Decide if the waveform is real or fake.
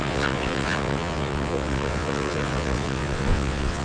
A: fake